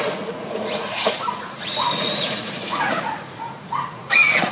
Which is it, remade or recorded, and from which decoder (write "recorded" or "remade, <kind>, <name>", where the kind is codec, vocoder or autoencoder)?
remade, vocoder, Vocos